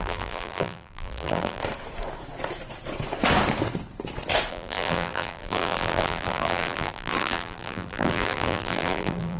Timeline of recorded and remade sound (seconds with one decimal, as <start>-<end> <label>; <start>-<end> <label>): 0.0-1.6 remade; 1.6-4.5 recorded; 4.5-9.4 remade

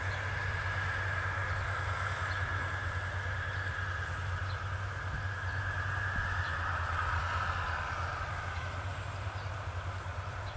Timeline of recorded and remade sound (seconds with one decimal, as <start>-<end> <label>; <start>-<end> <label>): 0.0-10.6 recorded